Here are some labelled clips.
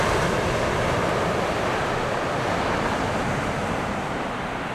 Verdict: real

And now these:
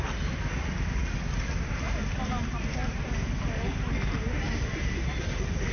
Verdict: real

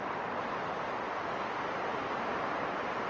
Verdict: real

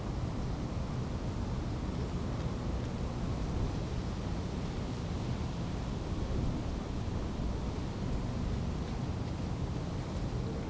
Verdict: real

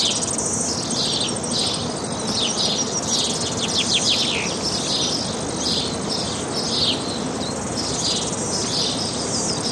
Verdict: real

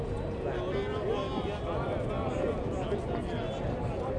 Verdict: real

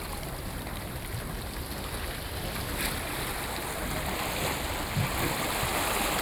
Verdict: real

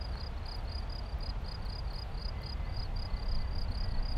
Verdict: real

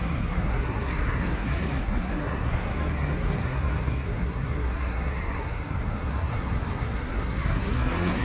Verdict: fake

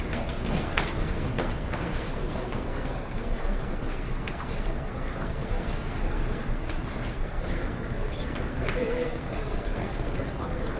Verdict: fake